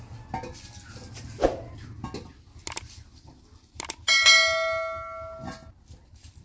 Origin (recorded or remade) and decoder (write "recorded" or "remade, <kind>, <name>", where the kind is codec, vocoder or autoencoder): recorded